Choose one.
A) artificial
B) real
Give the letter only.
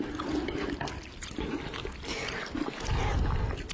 B